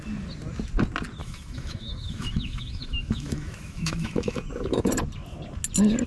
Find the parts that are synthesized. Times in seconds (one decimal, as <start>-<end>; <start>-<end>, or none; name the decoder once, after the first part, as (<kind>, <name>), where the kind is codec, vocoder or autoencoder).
1.2-4.9 (autoencoder, DAC-VAE)